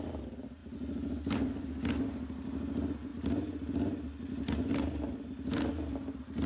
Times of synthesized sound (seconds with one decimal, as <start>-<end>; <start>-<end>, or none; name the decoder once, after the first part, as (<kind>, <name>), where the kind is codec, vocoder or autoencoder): none